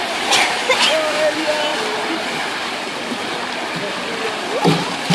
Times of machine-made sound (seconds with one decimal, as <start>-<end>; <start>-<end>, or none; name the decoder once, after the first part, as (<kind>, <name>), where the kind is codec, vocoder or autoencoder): none

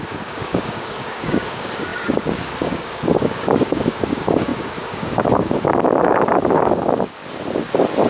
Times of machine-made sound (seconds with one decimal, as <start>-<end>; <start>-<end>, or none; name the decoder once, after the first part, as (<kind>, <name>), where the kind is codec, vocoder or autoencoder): 0.0-7.2 (codec, DAC)

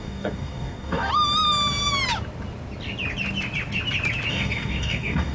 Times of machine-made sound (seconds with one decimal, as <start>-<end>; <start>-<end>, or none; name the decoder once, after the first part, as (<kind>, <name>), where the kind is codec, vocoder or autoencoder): 0.0-1.1 (codec, DAC); 4.3-5.3

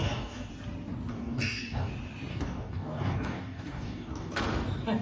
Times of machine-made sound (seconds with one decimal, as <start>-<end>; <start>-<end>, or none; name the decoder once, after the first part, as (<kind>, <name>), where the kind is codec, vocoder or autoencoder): 0.0-0.5 (codec, DAC); 1.1-1.9; 2.3-4.3